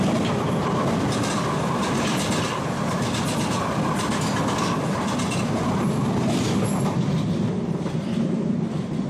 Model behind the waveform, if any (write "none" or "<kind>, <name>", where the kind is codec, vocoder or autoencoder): none